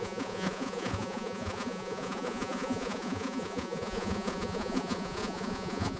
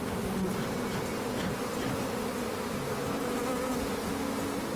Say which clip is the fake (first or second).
first